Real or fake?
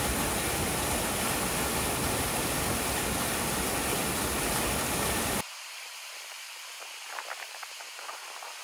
real